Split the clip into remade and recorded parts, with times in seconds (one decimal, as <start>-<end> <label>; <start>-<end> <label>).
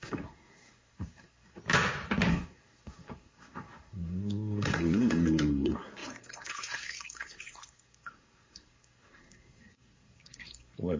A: 0.0-1.6 remade; 1.6-2.3 recorded; 2.3-11.0 remade